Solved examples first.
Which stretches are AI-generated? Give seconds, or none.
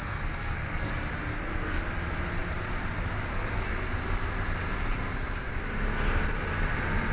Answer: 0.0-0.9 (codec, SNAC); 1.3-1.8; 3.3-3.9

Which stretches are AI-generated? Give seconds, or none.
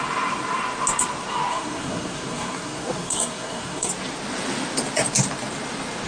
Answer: 1.5-3.9 (codec, SNAC)